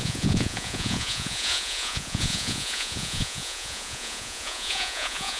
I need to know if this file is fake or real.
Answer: fake